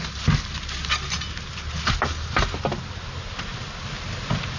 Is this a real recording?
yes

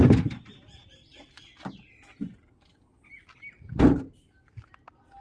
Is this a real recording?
yes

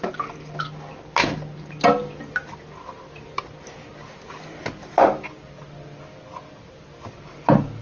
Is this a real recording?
yes